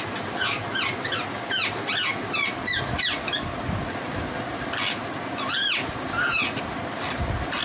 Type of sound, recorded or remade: recorded